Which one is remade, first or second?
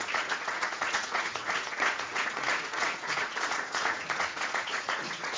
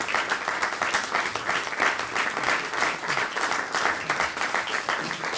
first